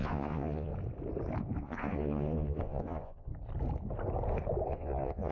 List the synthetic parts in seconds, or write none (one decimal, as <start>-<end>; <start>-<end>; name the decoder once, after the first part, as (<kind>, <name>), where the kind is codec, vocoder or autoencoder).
0.0-0.7 (vocoder, Vocos); 1.6-3.3; 4.7-5.3